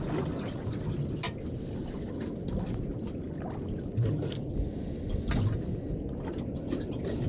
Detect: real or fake real